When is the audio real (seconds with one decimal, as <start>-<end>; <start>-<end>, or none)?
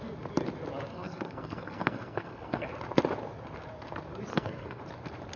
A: 0.0-0.9; 2.7-4.3; 4.8-5.4